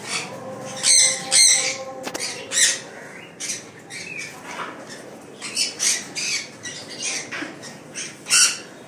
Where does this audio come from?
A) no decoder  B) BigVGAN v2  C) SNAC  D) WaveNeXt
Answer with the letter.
A